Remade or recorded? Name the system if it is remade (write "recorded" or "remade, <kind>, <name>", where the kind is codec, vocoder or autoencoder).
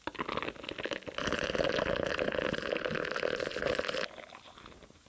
recorded